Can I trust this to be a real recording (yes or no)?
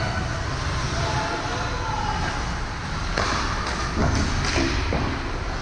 yes